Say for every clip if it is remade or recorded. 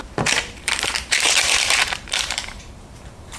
remade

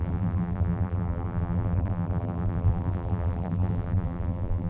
remade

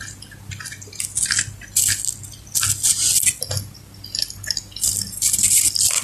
recorded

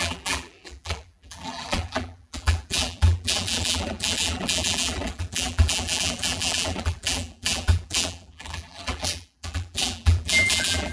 remade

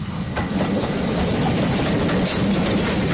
recorded